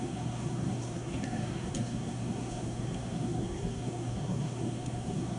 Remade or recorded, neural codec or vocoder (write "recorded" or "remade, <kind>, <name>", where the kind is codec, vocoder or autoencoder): remade, codec, SNAC